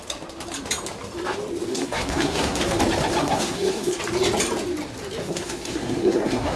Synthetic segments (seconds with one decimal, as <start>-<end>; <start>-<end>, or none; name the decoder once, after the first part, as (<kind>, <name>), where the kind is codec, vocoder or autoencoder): 1.7-2.8 (codec, SNAC); 3.2-4.0; 5.2-6.6